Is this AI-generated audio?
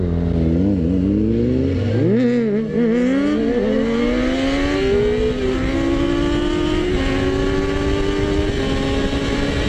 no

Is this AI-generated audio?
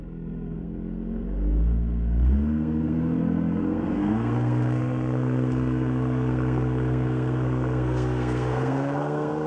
yes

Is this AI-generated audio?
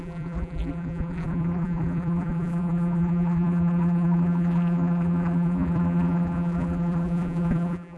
yes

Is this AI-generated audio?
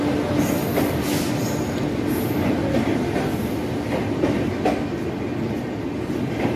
no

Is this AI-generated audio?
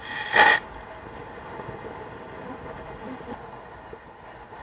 no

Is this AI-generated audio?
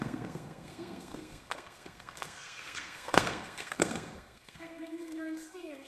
yes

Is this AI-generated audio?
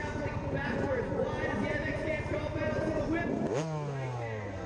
no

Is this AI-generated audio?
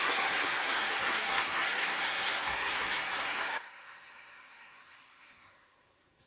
yes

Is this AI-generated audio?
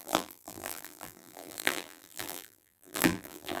yes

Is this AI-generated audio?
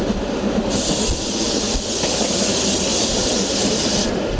no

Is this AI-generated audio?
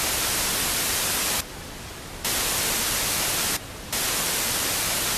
no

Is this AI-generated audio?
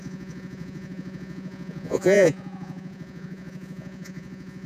yes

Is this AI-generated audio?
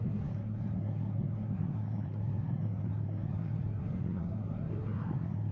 yes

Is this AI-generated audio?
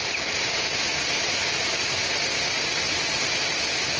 no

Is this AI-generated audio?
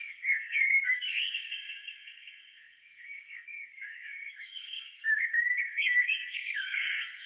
yes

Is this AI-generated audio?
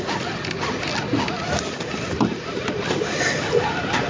no